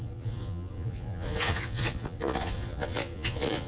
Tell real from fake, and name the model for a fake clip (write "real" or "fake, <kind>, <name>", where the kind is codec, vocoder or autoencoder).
fake, vocoder, Vocos